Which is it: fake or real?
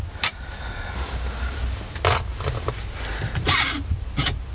real